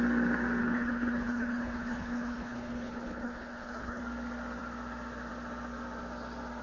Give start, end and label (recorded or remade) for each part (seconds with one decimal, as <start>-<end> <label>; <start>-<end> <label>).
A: 0.0-0.6 recorded; 0.6-4.0 remade; 4.0-6.6 recorded